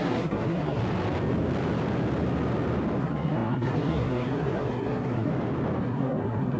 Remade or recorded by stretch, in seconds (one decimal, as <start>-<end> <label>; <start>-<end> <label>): 0.0-0.8 remade; 0.8-3.0 recorded; 3.0-5.3 remade; 5.3-5.8 recorded; 5.8-6.6 remade